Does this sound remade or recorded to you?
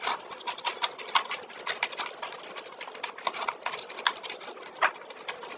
recorded